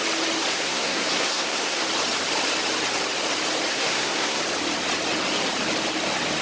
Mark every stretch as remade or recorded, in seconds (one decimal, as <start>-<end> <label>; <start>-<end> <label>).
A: 0.0-0.5 recorded; 0.5-1.8 remade; 1.8-3.7 recorded; 3.7-4.4 remade; 4.4-6.4 recorded